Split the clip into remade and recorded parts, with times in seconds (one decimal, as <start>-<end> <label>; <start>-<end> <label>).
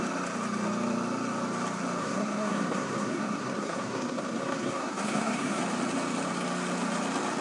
0.0-2.0 recorded; 2.0-5.6 remade; 5.6-7.4 recorded